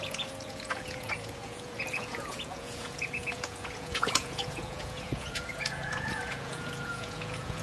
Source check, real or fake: fake